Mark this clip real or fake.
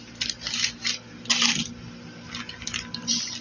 real